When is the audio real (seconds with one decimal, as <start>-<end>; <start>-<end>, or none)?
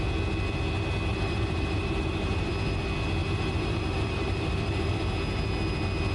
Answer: 0.0-1.1; 2.5-3.2; 5.0-6.1